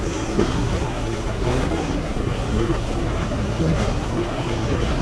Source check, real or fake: fake